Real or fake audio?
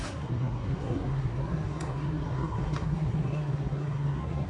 fake